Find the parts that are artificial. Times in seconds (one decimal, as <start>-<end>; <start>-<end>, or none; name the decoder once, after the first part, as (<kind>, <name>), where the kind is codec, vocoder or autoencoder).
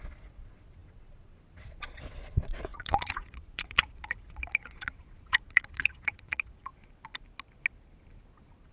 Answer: 0.0-6.7 (vocoder, Vocos)